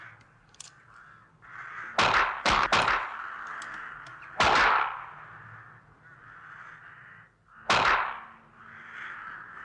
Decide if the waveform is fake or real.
real